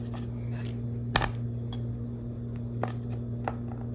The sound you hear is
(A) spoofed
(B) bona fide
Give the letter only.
B